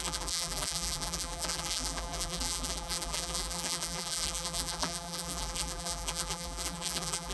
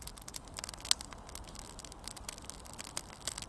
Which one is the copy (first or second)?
first